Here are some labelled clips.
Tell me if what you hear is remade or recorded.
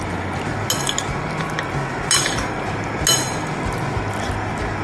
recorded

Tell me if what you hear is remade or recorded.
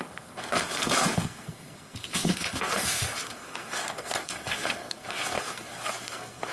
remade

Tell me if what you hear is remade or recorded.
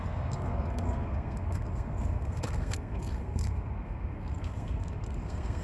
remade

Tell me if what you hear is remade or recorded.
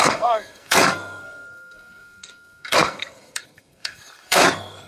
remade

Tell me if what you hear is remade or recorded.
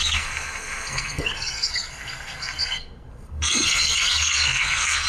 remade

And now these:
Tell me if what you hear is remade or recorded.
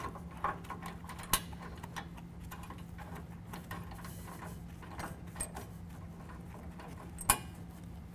recorded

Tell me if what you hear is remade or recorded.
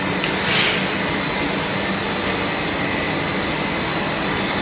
recorded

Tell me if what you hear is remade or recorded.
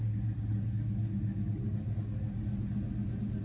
recorded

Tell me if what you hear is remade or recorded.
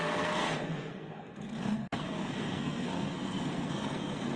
remade